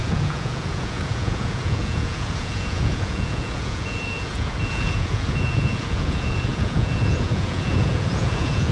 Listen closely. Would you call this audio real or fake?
fake